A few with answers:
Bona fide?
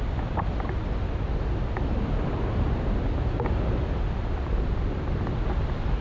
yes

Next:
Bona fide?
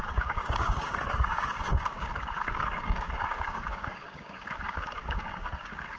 no